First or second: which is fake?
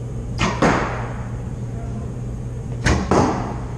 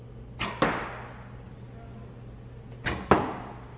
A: first